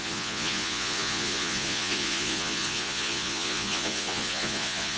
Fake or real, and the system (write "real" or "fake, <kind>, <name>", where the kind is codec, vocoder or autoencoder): fake, vocoder, Vocos